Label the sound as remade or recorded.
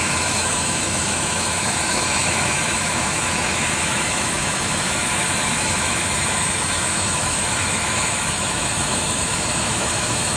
remade